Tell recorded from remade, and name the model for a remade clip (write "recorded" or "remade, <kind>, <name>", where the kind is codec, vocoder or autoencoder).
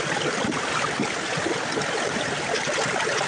recorded